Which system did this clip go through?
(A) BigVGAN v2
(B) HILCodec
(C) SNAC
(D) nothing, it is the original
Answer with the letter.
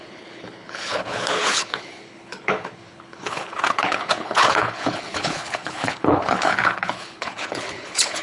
B